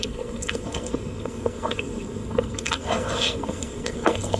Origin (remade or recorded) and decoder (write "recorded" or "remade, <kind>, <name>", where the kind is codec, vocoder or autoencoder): remade, codec, SNAC